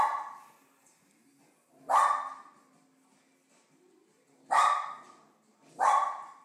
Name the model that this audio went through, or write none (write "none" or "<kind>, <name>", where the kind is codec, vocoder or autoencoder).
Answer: none